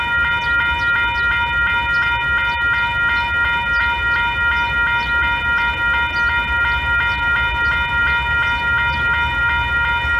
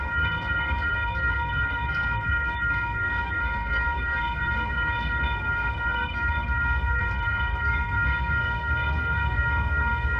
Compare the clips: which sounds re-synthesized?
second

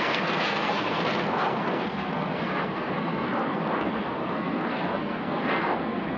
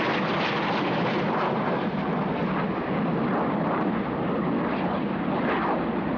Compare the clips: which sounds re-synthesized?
first